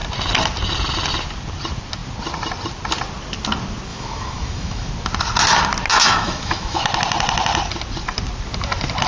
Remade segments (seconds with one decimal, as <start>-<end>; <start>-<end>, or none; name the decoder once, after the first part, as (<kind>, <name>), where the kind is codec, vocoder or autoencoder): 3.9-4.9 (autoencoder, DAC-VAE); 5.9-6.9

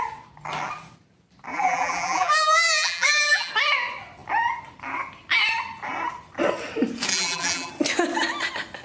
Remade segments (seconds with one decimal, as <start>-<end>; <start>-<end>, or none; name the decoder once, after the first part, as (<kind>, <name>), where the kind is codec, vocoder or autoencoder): 1.5-3.5 (vocoder, BigVGAN v2); 7.1-7.7

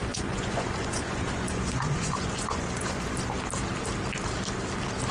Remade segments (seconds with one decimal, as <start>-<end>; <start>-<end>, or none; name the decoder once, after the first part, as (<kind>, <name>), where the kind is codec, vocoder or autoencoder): 0.0-3.1 (vocoder, Vocos)